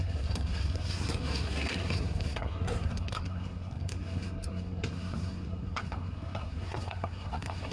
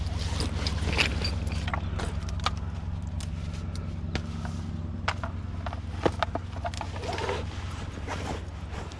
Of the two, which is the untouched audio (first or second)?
second